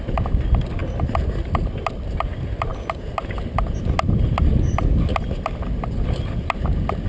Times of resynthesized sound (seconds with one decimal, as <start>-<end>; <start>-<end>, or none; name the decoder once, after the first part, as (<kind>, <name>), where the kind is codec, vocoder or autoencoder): none